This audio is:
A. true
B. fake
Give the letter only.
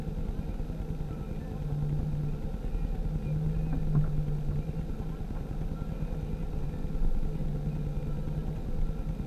A